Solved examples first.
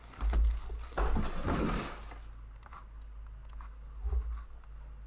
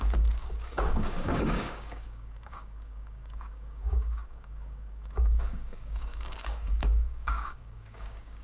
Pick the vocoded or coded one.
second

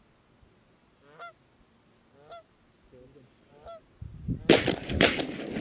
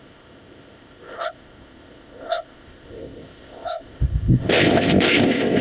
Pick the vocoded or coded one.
second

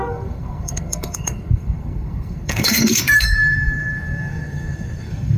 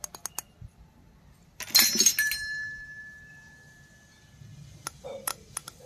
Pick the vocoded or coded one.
first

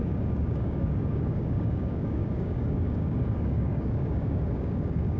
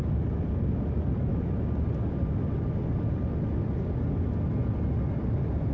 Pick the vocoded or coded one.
first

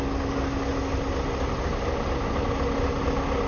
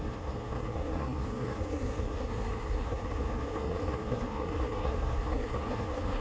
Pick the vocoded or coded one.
second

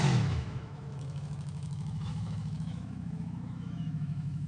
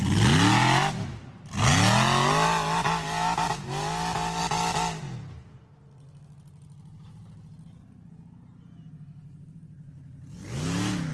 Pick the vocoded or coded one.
first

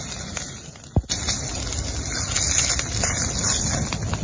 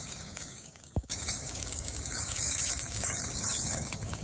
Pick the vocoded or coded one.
second